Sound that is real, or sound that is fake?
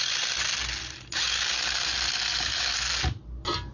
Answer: real